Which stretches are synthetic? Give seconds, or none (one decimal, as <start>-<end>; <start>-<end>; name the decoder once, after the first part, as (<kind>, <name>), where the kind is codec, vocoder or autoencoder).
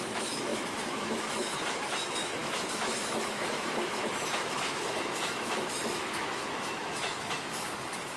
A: 0.0-8.2 (autoencoder, DAC-VAE)